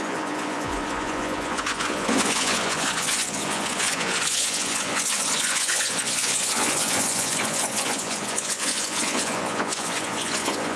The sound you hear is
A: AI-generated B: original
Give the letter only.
A